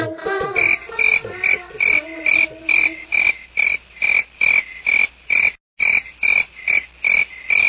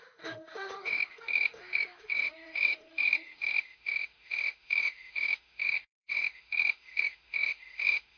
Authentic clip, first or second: first